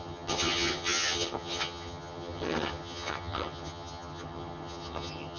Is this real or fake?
fake